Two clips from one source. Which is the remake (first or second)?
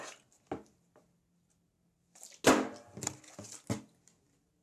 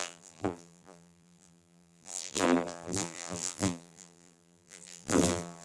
second